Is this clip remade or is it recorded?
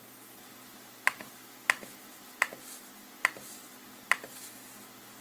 recorded